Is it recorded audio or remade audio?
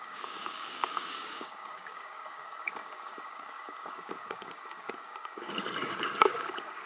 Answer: remade